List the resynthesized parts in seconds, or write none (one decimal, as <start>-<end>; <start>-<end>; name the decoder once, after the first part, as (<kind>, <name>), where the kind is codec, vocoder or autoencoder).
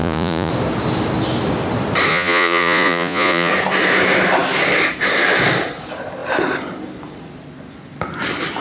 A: 0.0-0.5 (vocoder, Vocos); 2.1-3.5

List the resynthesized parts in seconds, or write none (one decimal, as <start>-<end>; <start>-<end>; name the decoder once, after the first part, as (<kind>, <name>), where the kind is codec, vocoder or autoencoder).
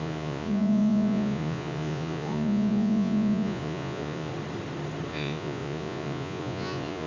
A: 0.0-4.3 (vocoder, Vocos); 5.1-7.1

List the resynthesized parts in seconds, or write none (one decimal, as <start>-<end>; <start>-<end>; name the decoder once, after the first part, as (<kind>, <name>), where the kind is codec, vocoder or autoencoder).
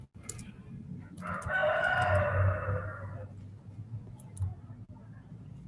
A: none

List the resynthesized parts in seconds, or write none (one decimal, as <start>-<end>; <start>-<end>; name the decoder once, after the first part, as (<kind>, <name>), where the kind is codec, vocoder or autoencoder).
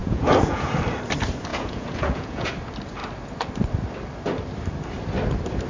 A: 0.0-0.7 (vocoder, Vocos); 1.5-2.5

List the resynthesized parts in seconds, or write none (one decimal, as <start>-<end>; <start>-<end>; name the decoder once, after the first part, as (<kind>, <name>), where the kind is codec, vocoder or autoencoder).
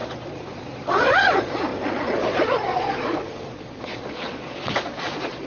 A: 0.0-5.5 (vocoder, Vocos)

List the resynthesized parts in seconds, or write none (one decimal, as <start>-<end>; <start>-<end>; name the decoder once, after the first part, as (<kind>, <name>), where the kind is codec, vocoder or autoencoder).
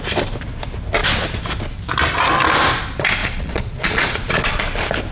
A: 3.2-4.6 (vocoder, Vocos)